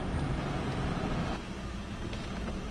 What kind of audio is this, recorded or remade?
recorded